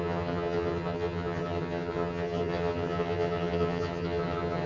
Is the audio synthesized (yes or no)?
yes